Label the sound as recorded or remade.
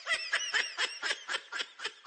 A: remade